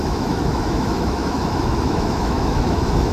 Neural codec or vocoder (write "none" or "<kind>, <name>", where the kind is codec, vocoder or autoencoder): autoencoder, DAC-VAE